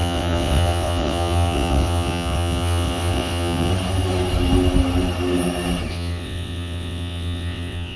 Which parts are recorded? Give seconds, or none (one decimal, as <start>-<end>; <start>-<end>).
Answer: 3.7-5.9